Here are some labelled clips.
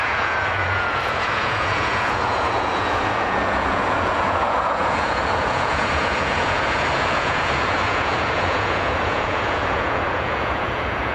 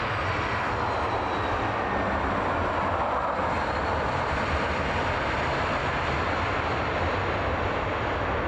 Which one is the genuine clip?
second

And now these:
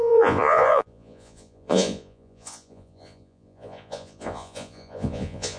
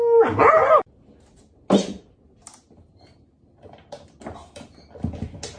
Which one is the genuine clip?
second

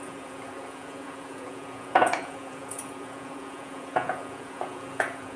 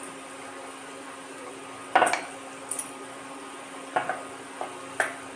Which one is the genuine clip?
second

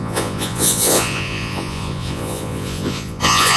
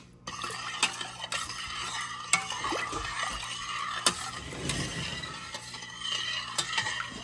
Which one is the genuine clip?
second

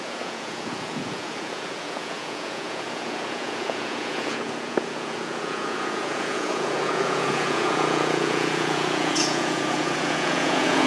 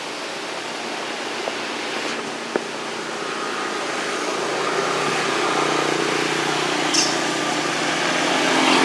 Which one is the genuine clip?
second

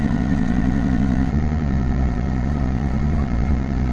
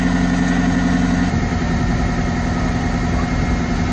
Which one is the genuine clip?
second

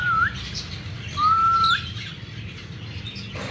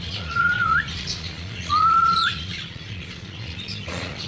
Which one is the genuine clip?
first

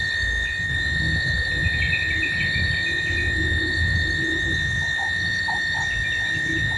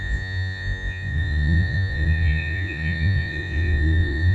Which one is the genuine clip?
first